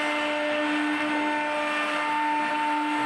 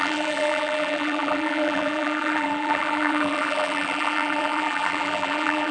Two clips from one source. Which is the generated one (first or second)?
second